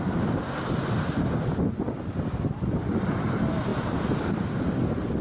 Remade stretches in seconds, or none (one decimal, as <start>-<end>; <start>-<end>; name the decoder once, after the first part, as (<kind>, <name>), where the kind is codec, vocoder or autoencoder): none